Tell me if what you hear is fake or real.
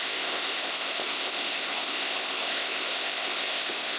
fake